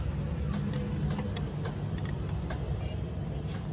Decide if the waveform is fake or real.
real